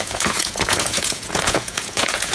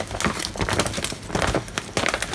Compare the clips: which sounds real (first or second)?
second